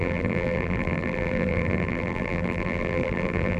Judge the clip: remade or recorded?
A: remade